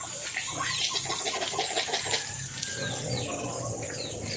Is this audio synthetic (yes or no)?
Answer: no